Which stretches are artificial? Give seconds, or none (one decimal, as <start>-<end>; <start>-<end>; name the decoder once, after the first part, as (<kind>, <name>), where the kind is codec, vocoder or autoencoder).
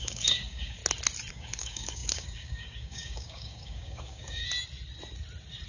0.0-0.8 (codec, DAC); 1.3-4.4